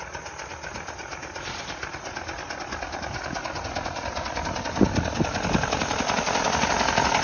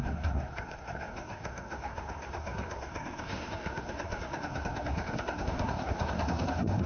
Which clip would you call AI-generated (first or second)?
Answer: second